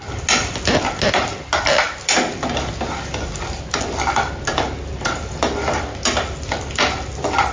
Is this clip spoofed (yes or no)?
no